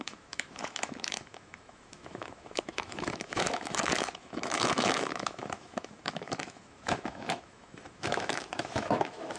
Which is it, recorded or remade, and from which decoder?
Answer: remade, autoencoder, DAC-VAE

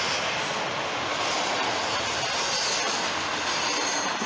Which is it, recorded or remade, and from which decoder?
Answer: recorded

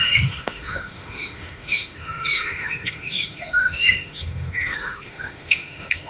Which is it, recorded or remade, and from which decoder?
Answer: remade, autoencoder, DAC-VAE